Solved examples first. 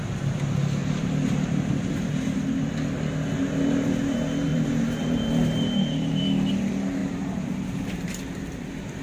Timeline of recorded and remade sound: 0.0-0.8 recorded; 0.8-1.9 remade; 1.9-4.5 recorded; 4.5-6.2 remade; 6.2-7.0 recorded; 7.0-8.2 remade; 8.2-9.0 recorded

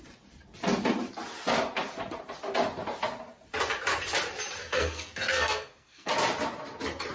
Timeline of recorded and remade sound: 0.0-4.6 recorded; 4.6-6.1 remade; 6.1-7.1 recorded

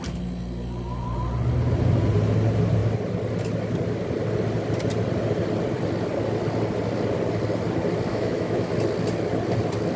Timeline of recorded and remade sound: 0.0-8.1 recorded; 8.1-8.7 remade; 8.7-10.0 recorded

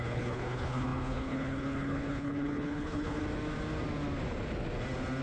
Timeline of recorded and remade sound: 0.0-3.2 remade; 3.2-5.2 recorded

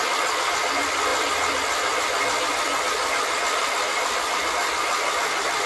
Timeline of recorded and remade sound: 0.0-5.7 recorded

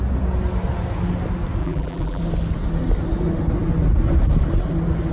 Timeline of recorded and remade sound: 0.0-1.6 recorded; 1.6-2.2 remade; 2.2-5.1 recorded

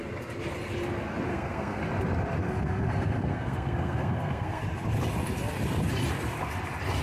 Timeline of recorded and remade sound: 0.0-1.3 recorded; 1.3-1.8 remade; 1.8-2.4 recorded; 2.4-4.6 remade; 4.6-7.0 recorded